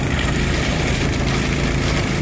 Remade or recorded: remade